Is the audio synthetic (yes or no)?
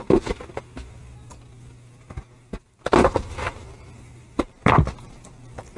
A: no